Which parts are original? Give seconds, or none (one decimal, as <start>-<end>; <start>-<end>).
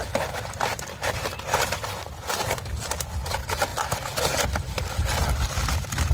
0.0-6.1